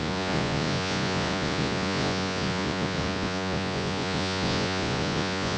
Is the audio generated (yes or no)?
yes